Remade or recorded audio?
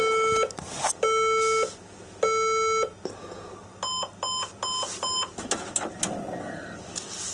recorded